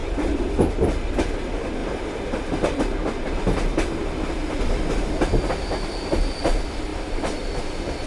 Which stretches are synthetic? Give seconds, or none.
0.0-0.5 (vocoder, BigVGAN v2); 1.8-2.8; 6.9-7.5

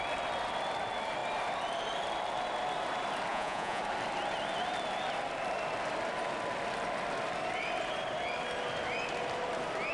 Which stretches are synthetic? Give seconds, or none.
3.3-3.8 (vocoder, Vocos)